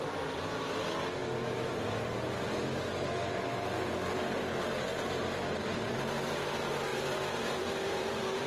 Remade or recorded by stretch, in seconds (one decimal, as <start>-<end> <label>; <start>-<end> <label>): 0.0-6.9 recorded; 6.9-8.1 remade; 8.1-8.5 recorded